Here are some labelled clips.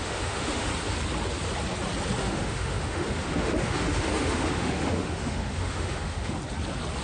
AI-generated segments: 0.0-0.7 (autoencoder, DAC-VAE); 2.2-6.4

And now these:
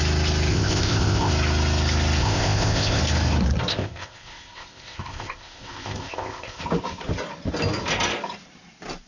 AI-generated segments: 0.5-1.3 (codec, ZipCodec); 2.2-3.0; 3.7-6.6

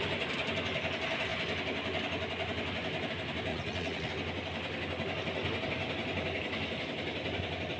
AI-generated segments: 3.5-4.1 (vocoder, Vocos)

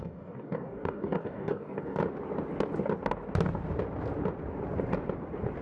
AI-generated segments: 0.0-2.0 (codec, DAC)

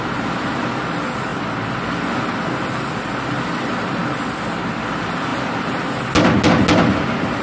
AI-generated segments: none